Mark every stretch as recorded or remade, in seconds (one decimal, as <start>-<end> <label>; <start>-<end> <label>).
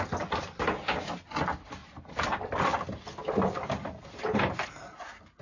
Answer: 0.0-5.4 recorded